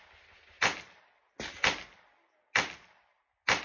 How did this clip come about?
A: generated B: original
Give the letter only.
B